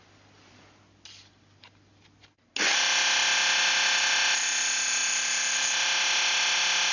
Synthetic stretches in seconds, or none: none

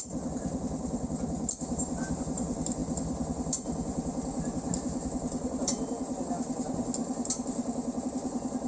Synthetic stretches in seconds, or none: none

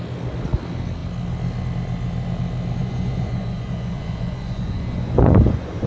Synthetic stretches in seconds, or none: 2.8-5.9

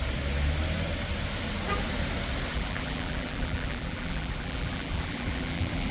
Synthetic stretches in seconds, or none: 2.5-5.9